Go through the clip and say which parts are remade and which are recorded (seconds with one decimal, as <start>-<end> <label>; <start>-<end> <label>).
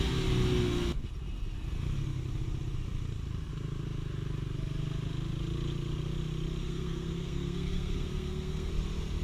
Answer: 0.0-6.6 recorded; 6.6-8.7 remade; 8.7-9.2 recorded